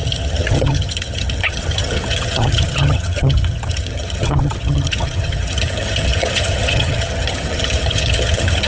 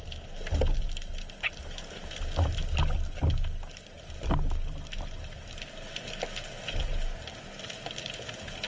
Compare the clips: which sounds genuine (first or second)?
second